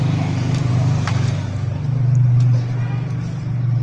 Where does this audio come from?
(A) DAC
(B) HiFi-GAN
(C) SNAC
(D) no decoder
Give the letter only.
D